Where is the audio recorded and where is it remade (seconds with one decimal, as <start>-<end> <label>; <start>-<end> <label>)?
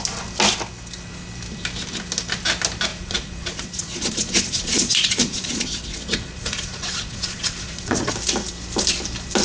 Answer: 0.0-2.9 recorded; 2.9-8.1 remade; 8.1-9.4 recorded